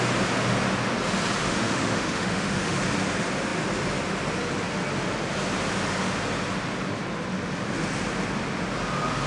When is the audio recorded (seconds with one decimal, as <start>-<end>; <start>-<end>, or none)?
0.0-1.4; 2.8-9.3